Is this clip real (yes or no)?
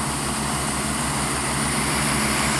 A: yes